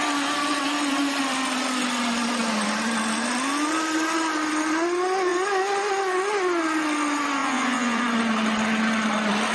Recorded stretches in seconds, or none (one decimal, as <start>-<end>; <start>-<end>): 0.0-7.4; 8.0-9.5